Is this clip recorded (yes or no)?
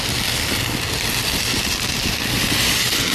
yes